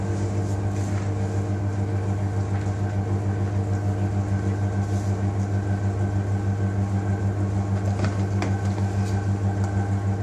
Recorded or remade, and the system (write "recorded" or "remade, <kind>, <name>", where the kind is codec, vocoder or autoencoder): recorded